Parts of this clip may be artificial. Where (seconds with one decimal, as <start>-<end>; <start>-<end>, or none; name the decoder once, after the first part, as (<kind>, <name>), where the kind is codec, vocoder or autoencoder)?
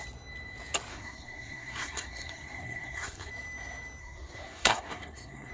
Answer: 0.9-3.3 (codec, SNAC); 4.0-5.5